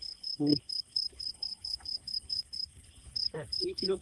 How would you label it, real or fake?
fake